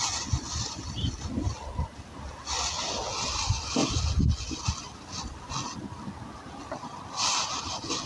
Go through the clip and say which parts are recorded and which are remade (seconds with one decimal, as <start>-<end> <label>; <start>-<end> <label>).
0.0-8.1 recorded

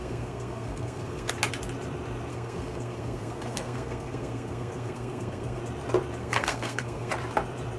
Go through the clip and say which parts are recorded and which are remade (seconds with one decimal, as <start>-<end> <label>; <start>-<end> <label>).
0.0-1.3 remade; 1.3-2.3 recorded; 2.3-5.6 remade; 5.6-6.2 recorded; 6.2-7.1 remade; 7.1-7.8 recorded

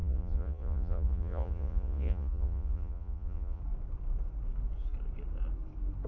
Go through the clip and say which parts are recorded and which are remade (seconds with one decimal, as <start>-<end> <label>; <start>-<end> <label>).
0.0-3.6 remade; 3.6-6.1 recorded